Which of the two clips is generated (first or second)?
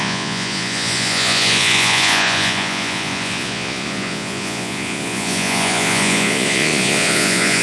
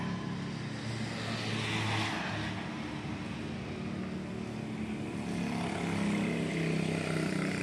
first